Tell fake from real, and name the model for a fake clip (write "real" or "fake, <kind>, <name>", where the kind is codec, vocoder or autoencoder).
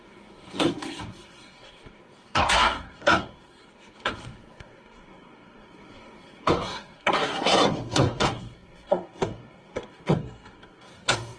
fake, codec, SNAC